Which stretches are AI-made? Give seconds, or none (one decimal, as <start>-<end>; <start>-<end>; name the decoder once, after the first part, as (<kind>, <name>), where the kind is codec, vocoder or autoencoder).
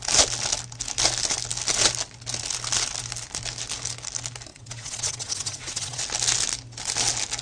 4.5-6.0 (vocoder, WaveNeXt)